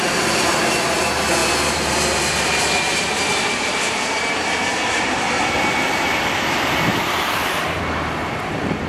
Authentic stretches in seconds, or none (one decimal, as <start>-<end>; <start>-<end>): 0.0-1.4; 4.2-6.9; 7.8-8.9